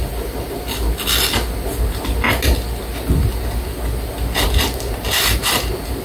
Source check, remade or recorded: recorded